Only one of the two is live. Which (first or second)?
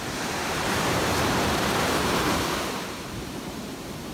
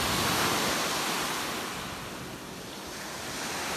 second